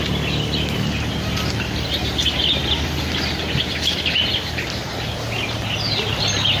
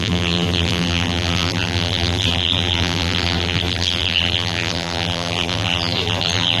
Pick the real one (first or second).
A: first